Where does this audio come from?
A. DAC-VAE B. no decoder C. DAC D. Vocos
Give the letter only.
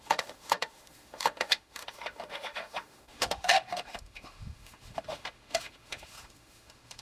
A